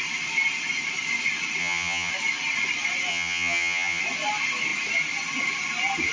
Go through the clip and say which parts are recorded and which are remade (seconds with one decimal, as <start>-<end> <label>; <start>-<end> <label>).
0.0-1.6 recorded; 1.6-2.1 remade; 2.1-3.1 recorded; 3.1-4.0 remade; 4.0-6.1 recorded

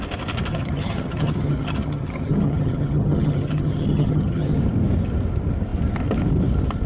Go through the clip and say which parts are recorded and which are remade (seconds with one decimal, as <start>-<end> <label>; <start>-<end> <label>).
0.0-0.5 recorded; 0.5-4.6 remade; 4.6-6.9 recorded

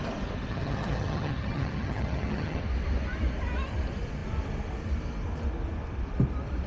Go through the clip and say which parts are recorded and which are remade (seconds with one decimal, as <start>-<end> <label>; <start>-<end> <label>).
0.0-0.5 recorded; 0.5-2.6 remade; 2.6-6.7 recorded